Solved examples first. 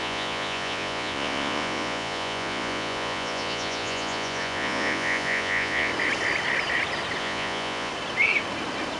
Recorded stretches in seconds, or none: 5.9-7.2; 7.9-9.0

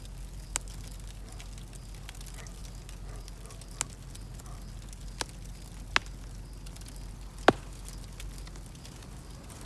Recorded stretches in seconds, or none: 0.0-9.6

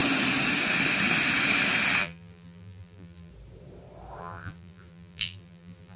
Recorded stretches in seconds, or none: 0.0-2.0; 3.3-4.2

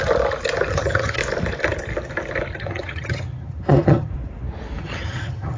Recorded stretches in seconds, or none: 0.0-0.7; 1.2-2.6; 4.1-4.8

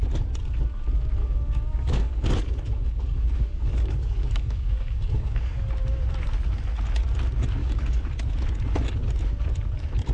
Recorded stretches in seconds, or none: 0.0-1.2; 5.7-7.6; 8.1-10.1

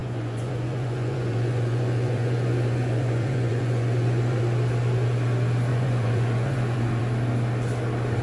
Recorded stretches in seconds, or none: 4.4-5.7; 7.0-8.2

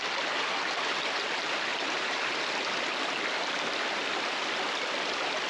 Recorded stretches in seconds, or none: 0.0-1.7; 2.4-5.5

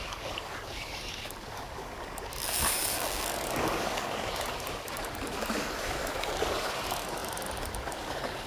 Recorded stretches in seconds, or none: none